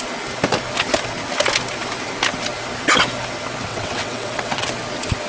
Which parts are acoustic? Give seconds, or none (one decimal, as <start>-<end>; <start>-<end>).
0.0-3.7; 4.7-5.3